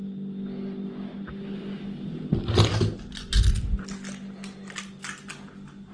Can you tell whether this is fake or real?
real